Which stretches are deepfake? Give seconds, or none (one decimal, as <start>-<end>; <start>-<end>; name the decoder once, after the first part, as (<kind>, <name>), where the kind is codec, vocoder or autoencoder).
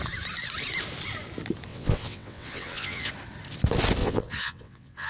1.7-3.1 (vocoder, WaveNeXt); 4.0-5.1